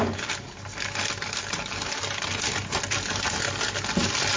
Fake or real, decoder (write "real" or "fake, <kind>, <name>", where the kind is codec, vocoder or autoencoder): real